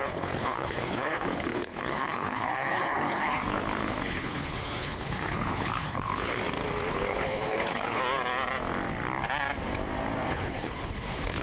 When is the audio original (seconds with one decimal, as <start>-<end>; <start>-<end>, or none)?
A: 6.4-6.9; 8.0-10.3